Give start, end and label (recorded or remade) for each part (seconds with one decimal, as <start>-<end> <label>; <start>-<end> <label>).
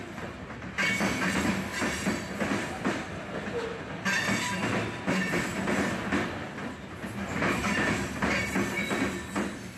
0.0-9.8 recorded